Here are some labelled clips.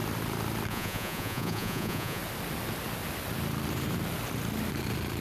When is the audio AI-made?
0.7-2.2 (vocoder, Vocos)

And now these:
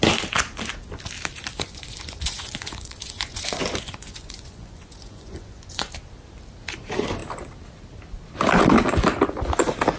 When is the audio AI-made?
1.5-5.9 (vocoder, Vocos)

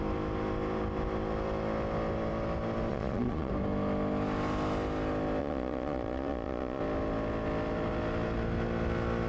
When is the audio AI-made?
2.9-3.5 (vocoder, Vocos); 5.4-6.8

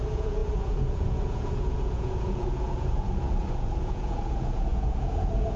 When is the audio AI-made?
0.0-5.6 (vocoder, Vocos)

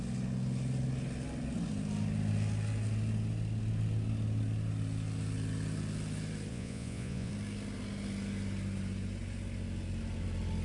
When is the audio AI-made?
6.5-7.3 (vocoder, Vocos)

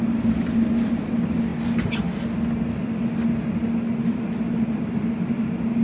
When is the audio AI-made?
none

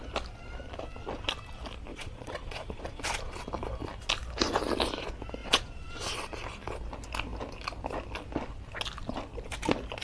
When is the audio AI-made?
1.9-3.0 (vocoder, Vocos); 5.4-6.1

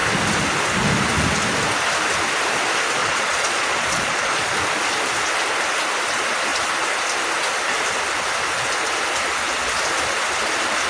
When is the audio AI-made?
3.0-4.5 (vocoder, Vocos)